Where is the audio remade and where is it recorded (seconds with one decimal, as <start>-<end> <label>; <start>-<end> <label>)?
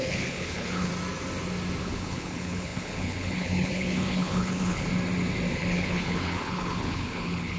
0.0-0.9 remade; 0.9-1.8 recorded; 1.8-4.9 remade; 4.9-5.5 recorded; 5.5-7.6 remade